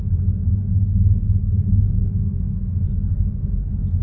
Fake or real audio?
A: fake